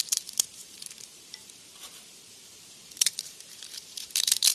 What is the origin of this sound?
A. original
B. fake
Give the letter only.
B